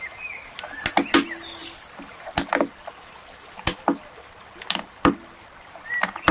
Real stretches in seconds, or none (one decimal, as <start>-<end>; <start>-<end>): 0.0-6.3